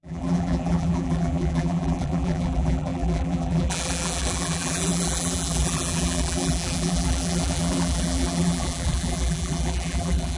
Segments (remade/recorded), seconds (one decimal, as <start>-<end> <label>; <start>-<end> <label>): 0.0-10.4 remade